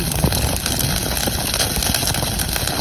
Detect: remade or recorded recorded